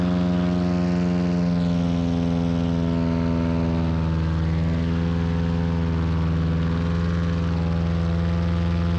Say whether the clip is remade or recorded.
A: recorded